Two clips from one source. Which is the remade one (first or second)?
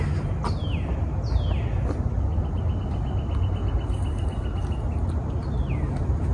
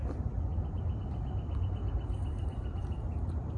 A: second